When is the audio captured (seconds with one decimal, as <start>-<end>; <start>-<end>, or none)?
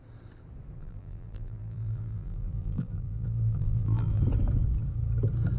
0.0-0.8; 4.2-5.6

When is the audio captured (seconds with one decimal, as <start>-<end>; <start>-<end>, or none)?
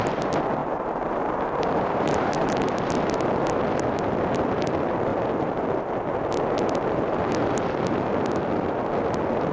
0.0-0.6; 2.7-9.5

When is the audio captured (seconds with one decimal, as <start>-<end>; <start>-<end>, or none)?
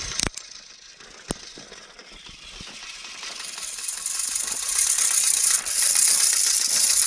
0.0-7.1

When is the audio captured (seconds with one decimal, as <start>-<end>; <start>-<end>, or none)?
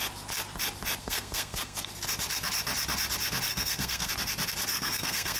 0.0-1.0; 1.9-3.5; 4.1-4.7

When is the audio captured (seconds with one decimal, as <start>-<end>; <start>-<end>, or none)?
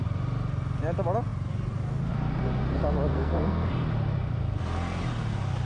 0.0-3.1; 3.7-5.7